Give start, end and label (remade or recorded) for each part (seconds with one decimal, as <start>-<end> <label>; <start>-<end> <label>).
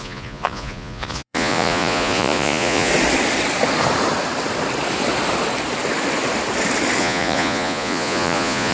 0.0-2.9 remade; 2.9-7.0 recorded; 7.0-8.7 remade